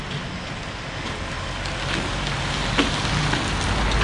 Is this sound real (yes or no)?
yes